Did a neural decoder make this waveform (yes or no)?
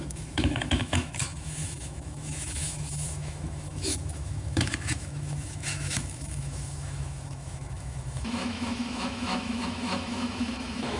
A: yes